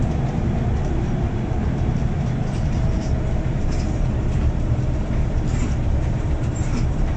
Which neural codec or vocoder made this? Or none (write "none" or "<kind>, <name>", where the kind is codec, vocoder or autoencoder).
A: vocoder, BigVGAN v2